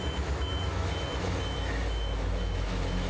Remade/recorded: remade